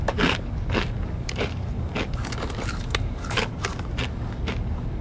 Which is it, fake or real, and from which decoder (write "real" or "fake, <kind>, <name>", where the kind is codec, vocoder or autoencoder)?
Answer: fake, codec, DAC